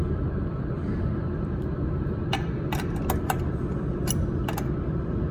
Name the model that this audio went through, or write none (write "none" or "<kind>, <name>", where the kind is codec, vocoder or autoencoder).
none